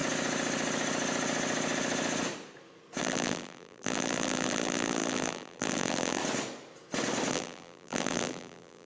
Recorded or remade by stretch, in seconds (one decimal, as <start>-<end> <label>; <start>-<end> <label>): 0.0-3.0 recorded; 3.0-6.2 remade; 6.2-7.3 recorded; 7.3-8.8 remade